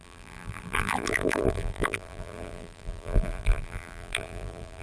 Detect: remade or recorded remade